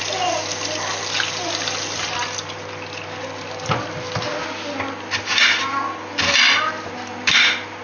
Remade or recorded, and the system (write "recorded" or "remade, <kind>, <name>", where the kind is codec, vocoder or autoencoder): recorded